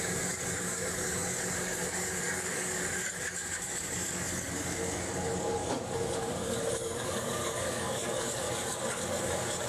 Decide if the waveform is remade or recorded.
remade